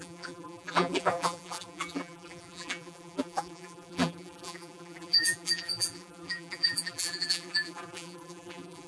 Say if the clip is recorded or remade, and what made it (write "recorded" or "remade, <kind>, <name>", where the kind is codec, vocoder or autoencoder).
remade, vocoder, BigVGAN v2